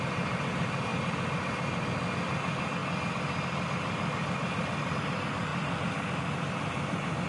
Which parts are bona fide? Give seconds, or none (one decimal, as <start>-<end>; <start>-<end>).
0.0-7.3